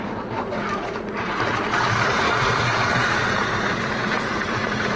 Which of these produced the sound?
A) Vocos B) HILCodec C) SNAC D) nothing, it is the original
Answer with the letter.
A